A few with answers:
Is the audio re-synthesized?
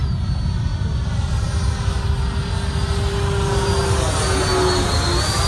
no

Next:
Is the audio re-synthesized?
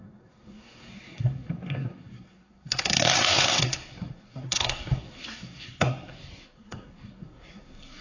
yes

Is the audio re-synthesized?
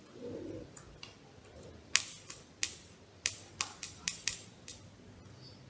no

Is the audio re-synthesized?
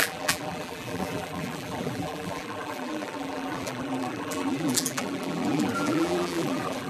yes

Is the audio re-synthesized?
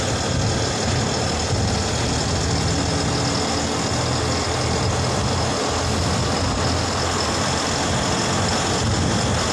no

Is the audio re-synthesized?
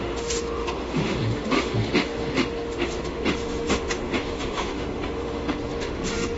yes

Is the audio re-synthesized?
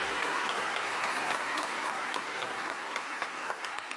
yes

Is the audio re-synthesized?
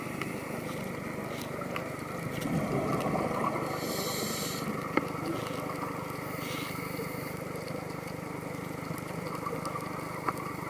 no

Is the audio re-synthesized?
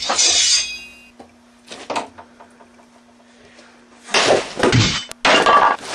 no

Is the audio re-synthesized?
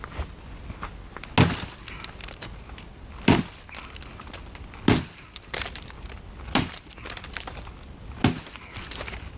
no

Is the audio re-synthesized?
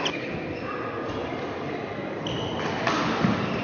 no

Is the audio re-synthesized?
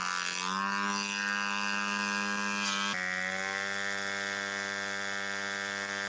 no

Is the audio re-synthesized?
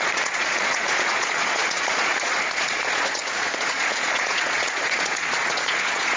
yes